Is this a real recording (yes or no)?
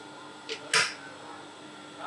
yes